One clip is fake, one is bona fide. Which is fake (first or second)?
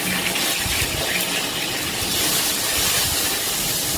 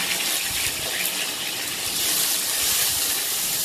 first